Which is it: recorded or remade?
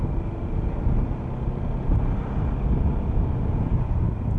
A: recorded